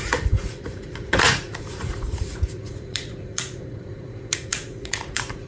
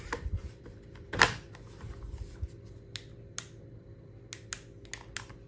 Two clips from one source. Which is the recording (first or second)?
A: second